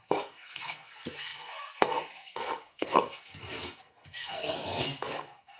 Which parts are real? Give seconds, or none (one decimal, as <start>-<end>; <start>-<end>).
none